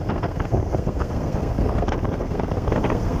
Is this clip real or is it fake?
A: fake